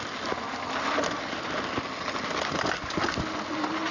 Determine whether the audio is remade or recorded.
recorded